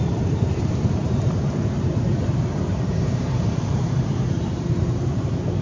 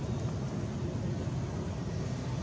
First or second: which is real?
second